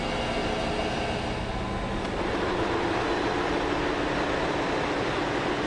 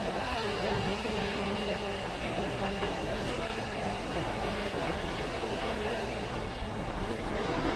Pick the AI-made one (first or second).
second